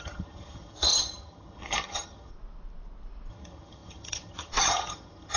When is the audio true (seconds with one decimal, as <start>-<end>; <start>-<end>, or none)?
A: 2.3-3.3